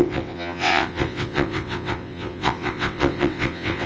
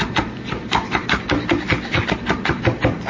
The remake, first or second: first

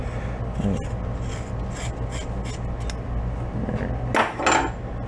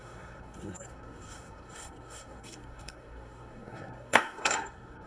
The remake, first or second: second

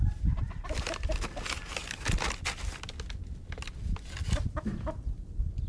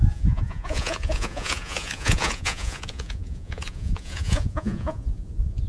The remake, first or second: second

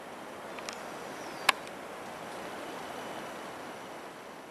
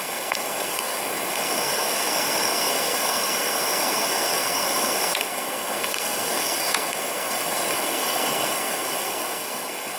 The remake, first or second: second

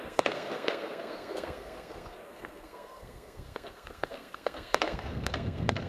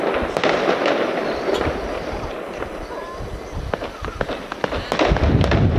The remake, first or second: first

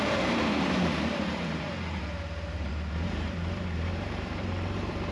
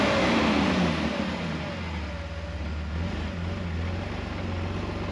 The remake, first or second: first